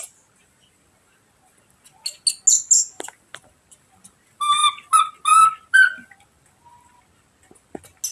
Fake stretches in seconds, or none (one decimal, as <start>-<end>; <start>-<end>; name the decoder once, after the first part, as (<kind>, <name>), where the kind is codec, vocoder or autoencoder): none